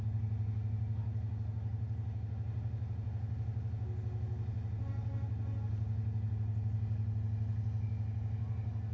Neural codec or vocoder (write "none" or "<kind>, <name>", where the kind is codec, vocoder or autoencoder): none